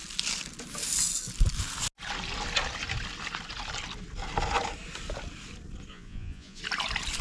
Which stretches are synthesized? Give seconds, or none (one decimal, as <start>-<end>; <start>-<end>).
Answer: 5.9-6.6

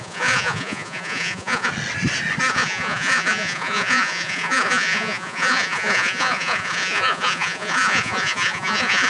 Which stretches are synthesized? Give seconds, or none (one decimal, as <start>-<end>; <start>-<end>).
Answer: 0.0-1.7; 2.5-9.1

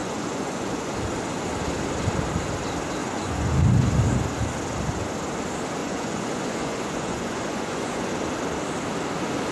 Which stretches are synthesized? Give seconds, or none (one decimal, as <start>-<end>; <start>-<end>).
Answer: 0.0-0.9; 3.0-3.5; 5.8-8.1

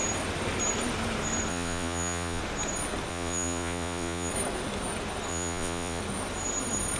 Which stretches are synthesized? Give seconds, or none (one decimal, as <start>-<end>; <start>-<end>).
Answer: 1.5-2.4; 3.1-4.3; 5.3-6.0

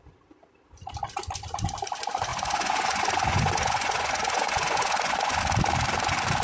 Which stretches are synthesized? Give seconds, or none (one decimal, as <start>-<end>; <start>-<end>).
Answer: 2.3-5.4

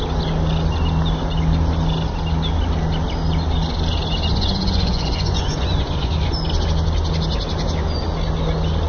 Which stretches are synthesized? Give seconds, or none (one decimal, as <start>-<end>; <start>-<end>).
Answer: 4.3-6.3